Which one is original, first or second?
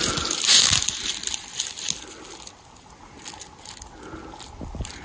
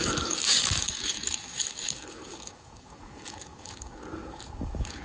first